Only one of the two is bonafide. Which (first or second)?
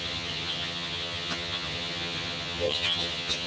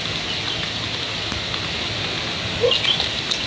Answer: second